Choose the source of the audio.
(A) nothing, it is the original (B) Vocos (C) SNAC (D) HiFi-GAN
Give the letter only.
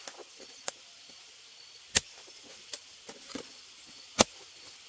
A